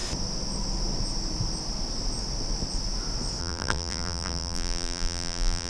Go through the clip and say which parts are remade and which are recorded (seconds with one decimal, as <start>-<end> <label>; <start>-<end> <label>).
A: 0.0-3.4 recorded; 3.4-5.7 remade